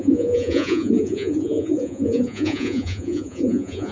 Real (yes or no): no